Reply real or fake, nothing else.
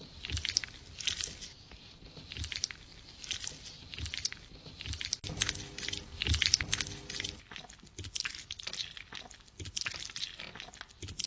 real